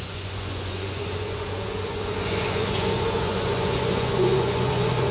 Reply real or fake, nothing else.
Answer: fake